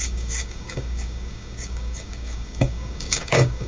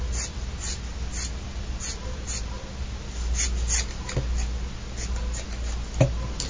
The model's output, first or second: first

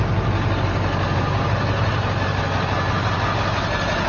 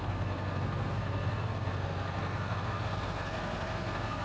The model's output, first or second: second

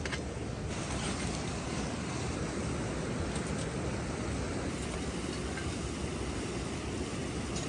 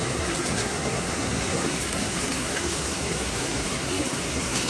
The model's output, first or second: second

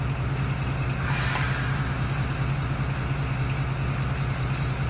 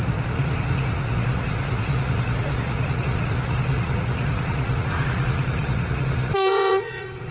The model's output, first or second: second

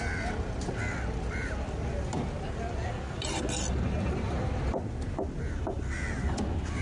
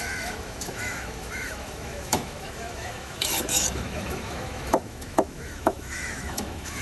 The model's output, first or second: second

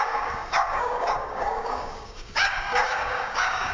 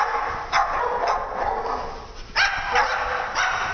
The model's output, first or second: first